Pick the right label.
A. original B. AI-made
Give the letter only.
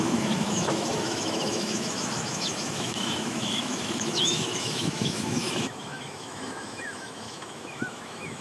B